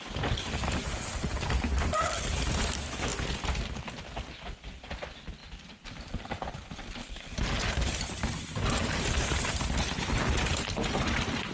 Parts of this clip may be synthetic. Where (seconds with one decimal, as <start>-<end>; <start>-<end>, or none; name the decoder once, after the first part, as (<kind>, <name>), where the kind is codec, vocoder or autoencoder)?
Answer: none